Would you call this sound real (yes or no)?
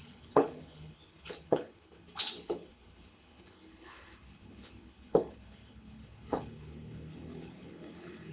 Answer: no